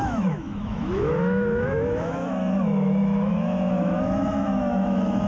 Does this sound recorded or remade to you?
remade